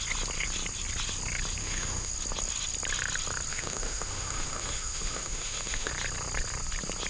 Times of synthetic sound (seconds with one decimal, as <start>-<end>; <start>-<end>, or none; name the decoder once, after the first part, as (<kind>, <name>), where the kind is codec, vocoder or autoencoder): 1.6-2.1 (autoencoder, DAC-VAE); 3.5-5.9